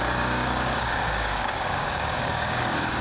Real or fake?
fake